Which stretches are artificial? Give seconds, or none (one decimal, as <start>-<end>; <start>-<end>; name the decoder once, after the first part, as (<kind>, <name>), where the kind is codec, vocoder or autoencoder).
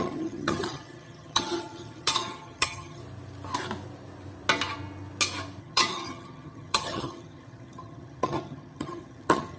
0.0-3.0 (vocoder, HiFi-GAN); 5.6-9.6